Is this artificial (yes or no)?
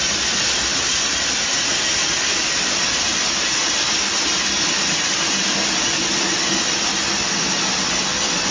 no